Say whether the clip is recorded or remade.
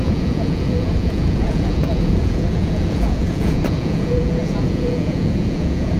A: remade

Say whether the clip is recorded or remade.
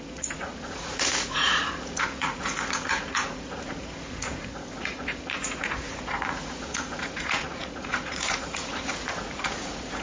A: remade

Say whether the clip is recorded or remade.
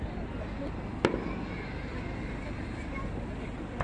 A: recorded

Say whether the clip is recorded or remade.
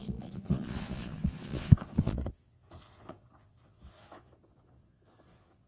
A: remade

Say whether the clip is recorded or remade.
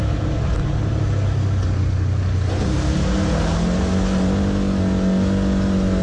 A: recorded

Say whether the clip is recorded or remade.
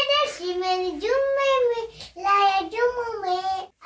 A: recorded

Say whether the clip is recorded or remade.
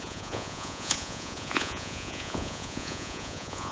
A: remade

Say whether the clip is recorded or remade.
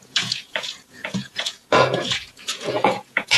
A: remade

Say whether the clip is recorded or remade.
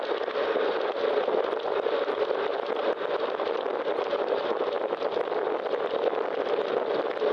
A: recorded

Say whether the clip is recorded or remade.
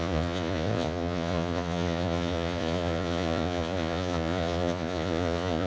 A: remade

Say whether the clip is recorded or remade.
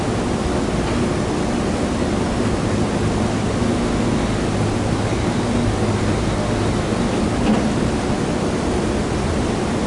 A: recorded